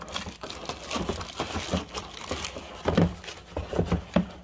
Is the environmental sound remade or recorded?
recorded